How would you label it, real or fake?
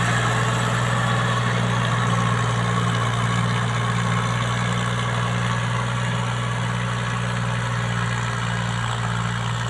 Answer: real